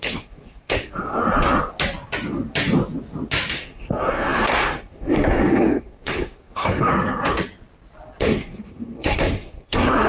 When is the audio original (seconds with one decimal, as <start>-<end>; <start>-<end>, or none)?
1.2-3.5; 6.9-8.2